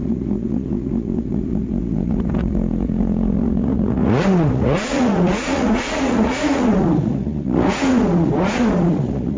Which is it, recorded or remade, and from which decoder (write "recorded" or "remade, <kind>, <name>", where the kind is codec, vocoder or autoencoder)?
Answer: remade, vocoder, Vocos